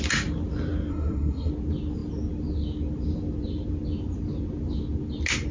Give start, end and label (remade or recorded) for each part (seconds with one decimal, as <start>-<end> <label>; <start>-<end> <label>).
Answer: 0.0-0.9 recorded; 0.9-1.5 remade; 1.5-5.5 recorded